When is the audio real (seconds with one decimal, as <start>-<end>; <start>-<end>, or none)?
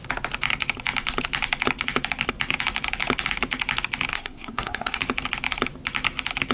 0.0-4.1; 5.0-6.5